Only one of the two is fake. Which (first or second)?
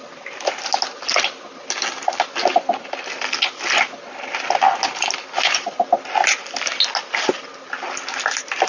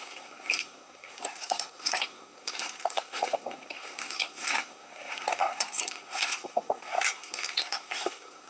second